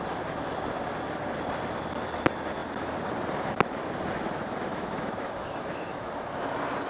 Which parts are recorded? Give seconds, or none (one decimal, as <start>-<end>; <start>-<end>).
0.0-4.7; 6.1-6.9